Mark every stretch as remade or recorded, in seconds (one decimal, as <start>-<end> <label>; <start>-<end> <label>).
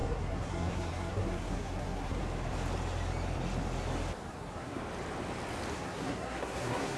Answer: 0.0-2.2 remade; 2.2-4.3 recorded; 4.3-4.8 remade; 4.8-5.7 recorded; 5.7-7.0 remade